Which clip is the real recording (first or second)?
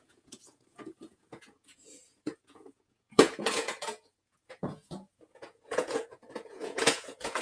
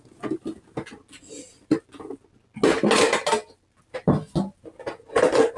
second